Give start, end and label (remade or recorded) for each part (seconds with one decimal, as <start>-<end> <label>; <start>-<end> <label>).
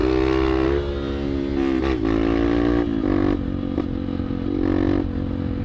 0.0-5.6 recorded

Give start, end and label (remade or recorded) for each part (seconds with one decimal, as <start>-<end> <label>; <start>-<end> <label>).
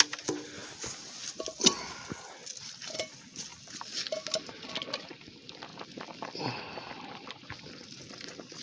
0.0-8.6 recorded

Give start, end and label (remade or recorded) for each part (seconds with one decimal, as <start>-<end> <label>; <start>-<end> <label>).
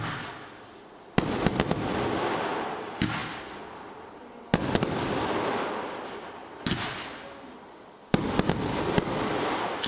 0.0-9.9 recorded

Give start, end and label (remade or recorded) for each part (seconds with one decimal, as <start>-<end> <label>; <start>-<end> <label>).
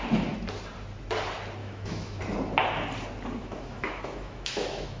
0.0-1.6 recorded; 1.6-2.2 remade; 2.2-3.4 recorded; 3.4-5.0 remade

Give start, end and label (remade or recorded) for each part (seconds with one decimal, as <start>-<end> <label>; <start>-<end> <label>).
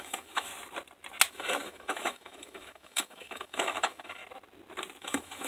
0.0-0.5 remade; 0.5-1.3 recorded; 1.3-4.2 remade; 4.2-5.0 recorded; 5.0-5.5 remade